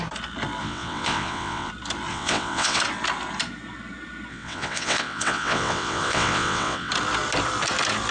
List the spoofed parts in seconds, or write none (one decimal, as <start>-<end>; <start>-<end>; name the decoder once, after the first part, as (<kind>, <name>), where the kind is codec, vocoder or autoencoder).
0.6-1.7 (vocoder, WaveNeXt); 2.1-2.8; 4.3-6.9

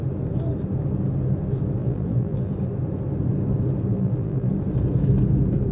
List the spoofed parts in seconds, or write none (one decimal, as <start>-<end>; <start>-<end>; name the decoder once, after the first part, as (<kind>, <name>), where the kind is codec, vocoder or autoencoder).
1.8-2.5 (vocoder, BigVGAN v2); 3.9-4.5

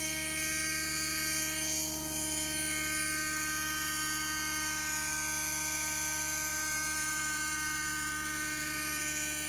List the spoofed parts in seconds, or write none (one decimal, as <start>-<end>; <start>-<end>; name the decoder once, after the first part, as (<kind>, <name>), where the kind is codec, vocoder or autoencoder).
6.5-9.0 (vocoder, BigVGAN v2)

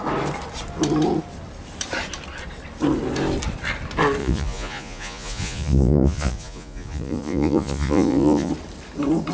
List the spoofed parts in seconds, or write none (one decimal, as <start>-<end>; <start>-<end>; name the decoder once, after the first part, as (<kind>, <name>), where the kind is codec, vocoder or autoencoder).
4.2-8.5 (vocoder, Vocos)

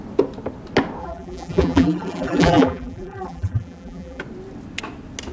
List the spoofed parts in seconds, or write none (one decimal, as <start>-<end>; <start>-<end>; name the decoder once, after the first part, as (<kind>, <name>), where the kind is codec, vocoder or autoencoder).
1.0-4.2 (vocoder, BigVGAN v2)